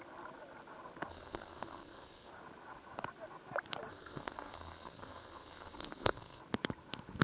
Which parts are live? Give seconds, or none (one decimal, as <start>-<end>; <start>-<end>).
0.0-1.1; 2.3-3.9; 6.4-7.2

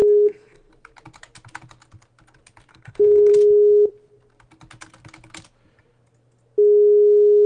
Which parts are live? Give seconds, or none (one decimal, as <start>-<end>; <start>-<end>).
0.7-2.7; 3.3-7.5

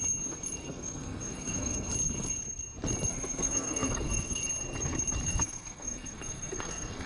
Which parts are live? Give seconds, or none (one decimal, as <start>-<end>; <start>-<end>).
0.0-0.6; 1.9-3.1; 4.4-5.3

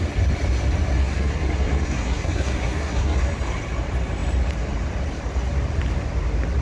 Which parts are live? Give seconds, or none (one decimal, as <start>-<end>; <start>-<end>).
0.0-1.0; 3.2-6.6

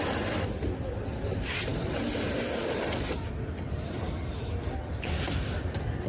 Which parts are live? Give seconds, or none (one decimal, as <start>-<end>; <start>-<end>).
0.0-6.1